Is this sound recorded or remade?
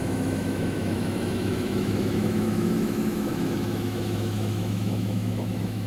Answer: remade